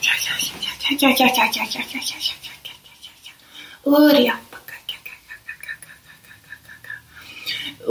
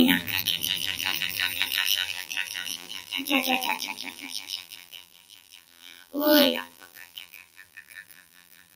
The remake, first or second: second